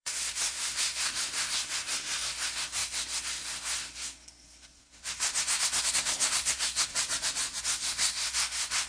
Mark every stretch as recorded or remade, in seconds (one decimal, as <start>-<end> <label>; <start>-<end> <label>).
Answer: 0.0-6.9 remade; 6.9-7.6 recorded; 7.6-8.9 remade